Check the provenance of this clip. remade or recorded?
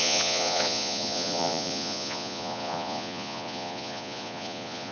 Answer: remade